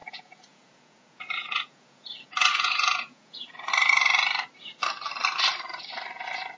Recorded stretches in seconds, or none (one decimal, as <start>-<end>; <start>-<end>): 3.7-6.6